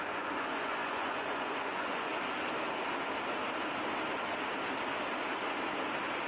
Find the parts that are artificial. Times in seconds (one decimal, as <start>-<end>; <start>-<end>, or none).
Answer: 0.0-2.1